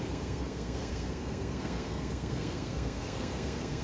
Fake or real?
fake